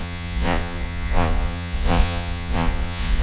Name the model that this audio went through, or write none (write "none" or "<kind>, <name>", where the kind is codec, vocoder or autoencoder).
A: vocoder, Vocos